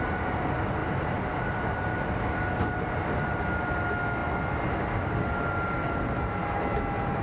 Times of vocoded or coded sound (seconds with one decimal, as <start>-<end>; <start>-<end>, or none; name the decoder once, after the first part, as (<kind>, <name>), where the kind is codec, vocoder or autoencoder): 0.8-3.6 (vocoder, BigVGAN v2)